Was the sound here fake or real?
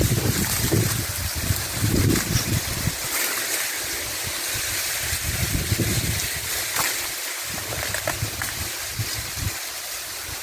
real